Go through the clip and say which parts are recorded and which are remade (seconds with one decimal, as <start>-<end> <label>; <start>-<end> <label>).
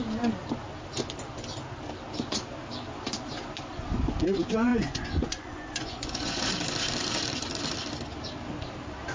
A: 0.0-4.7 recorded; 4.7-6.4 remade; 6.4-9.1 recorded